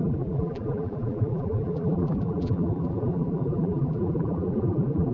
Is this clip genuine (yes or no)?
no